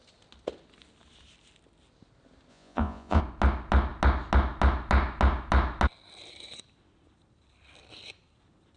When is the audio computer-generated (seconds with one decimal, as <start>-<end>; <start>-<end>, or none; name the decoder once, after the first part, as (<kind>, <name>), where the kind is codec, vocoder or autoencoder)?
2.5-3.2 (vocoder, Vocos)